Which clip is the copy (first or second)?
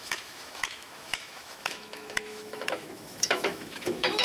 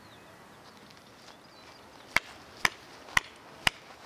first